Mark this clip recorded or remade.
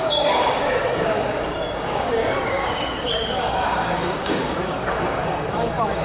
remade